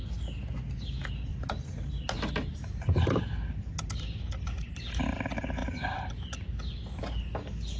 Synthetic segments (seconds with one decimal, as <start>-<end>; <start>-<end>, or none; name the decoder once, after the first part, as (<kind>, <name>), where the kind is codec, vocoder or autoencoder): 1.3-1.9 (vocoder, BigVGAN v2); 2.5-3.7; 5.6-6.4